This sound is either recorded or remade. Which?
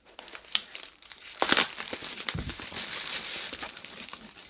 recorded